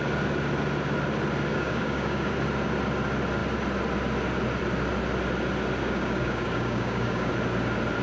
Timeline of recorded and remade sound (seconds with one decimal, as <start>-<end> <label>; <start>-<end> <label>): 0.0-1.5 recorded; 1.5-2.3 remade; 2.3-5.8 recorded; 5.8-7.3 remade; 7.3-8.0 recorded